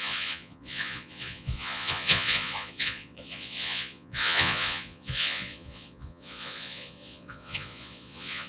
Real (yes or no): no